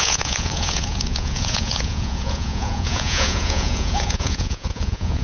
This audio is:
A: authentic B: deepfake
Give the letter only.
B